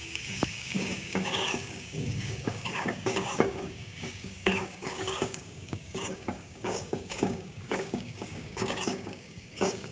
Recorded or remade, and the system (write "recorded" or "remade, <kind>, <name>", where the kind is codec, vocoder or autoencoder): remade, codec, DAC